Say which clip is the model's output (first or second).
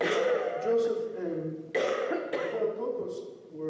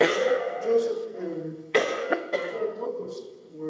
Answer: second